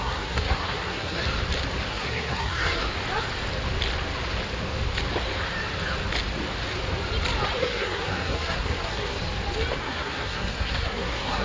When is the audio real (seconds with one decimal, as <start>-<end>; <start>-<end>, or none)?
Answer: 1.2-1.9; 2.8-7.6; 9.2-9.8